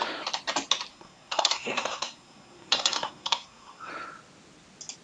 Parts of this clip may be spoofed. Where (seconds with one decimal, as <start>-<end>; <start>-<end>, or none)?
0.9-3.9